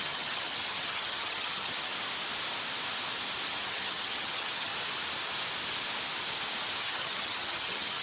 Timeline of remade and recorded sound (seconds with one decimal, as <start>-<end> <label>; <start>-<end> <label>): 0.0-1.9 remade; 1.9-3.7 recorded; 3.7-4.7 remade; 4.7-6.8 recorded; 6.8-8.0 remade